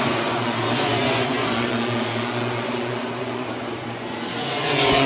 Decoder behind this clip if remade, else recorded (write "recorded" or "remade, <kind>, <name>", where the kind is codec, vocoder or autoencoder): remade, vocoder, Vocos